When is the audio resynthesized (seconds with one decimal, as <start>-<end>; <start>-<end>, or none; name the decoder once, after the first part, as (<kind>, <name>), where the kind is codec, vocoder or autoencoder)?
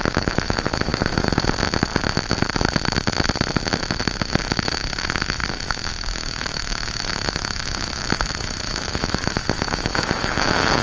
0.0-0.9 (autoencoder, DAC-VAE); 4.3-10.8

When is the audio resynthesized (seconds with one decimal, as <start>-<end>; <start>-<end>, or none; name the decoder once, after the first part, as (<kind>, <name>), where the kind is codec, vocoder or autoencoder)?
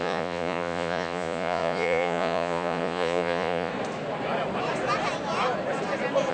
0.0-3.7 (vocoder, Vocos)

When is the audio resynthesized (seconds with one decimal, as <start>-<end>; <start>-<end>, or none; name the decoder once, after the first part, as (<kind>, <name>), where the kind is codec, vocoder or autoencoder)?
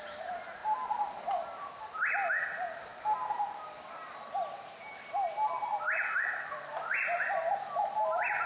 none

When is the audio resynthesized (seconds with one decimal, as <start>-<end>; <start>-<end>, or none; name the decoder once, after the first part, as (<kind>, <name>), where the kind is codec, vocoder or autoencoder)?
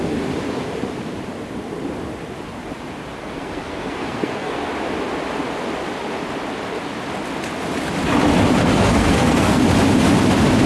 3.2-4.7 (codec, SNAC); 8.6-9.6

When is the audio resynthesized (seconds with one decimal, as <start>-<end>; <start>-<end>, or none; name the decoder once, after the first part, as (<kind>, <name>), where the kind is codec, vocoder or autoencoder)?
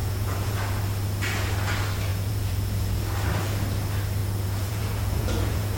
0.0-0.8 (vocoder, Vocos); 2.1-3.0; 4.2-5.8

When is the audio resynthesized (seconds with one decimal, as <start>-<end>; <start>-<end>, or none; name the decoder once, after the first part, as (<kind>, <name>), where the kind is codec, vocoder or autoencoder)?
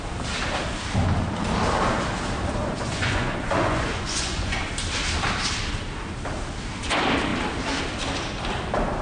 2.6-4.6 (vocoder, Vocos)